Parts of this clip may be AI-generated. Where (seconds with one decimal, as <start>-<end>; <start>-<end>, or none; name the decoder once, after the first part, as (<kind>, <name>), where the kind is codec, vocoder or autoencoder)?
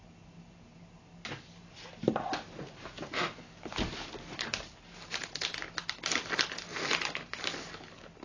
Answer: none